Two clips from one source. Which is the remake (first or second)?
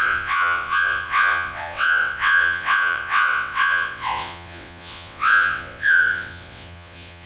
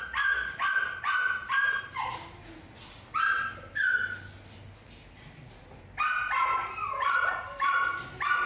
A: first